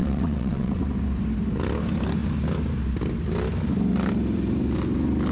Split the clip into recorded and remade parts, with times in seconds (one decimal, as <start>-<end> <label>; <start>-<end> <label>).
0.0-0.8 remade; 0.8-5.3 recorded